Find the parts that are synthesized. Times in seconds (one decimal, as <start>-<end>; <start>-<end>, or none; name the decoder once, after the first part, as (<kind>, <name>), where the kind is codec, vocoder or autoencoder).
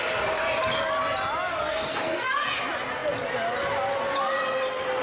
1.5-2.6 (codec, SNAC)